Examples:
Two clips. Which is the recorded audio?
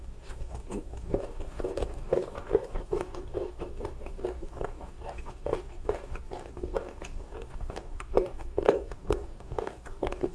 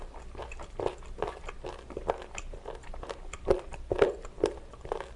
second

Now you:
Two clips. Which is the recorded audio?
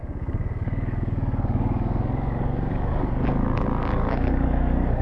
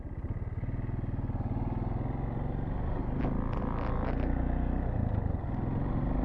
second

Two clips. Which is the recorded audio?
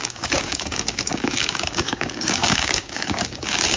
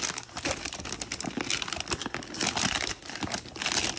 second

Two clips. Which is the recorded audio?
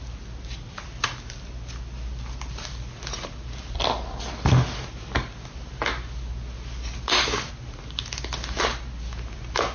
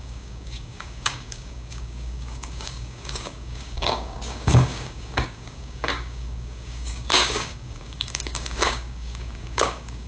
first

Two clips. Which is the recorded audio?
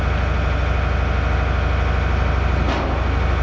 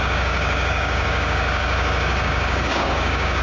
first